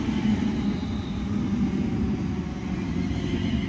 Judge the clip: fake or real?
real